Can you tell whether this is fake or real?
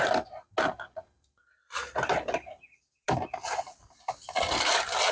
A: real